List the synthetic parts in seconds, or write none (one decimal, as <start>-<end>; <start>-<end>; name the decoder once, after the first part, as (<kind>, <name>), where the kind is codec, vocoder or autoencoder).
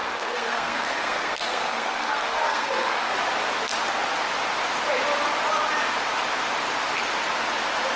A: 0.0-3.1 (codec, SNAC)